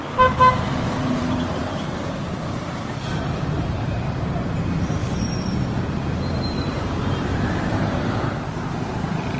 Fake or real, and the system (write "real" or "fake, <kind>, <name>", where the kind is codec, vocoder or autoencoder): fake, vocoder, BigVGAN v2